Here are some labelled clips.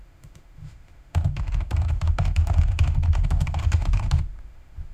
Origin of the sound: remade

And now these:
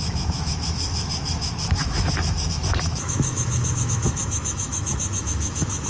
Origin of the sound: remade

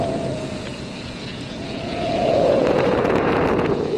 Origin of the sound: remade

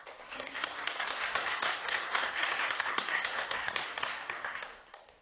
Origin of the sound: remade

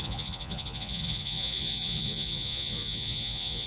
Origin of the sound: remade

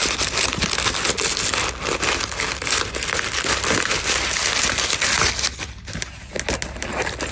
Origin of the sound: recorded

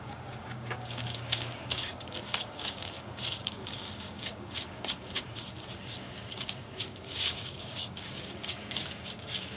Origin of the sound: remade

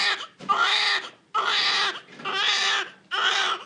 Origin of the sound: recorded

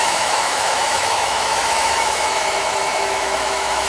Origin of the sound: remade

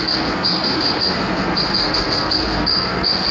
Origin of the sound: remade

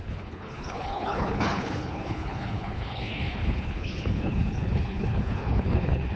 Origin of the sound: remade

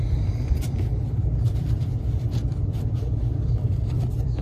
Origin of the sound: remade